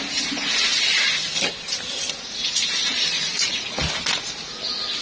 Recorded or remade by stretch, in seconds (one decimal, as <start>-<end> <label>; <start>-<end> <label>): 0.0-2.9 recorded; 2.9-3.8 remade; 3.8-5.0 recorded